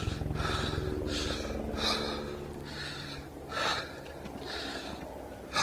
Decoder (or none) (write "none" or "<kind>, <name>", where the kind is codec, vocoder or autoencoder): none